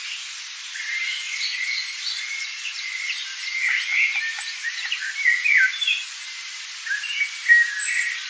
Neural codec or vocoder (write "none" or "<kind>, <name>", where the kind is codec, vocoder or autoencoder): vocoder, BigVGAN v2